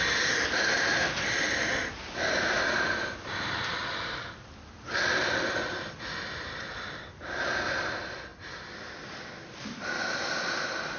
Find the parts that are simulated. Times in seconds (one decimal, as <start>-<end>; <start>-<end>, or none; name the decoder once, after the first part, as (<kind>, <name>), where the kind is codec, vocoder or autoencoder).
none